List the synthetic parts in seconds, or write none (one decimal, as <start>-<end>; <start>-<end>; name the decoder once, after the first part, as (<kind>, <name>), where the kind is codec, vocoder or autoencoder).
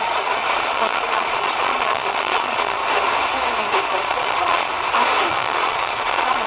0.0-2.8 (vocoder, Vocos); 3.9-4.7; 5.3-6.5